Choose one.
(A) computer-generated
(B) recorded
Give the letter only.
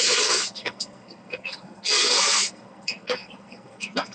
A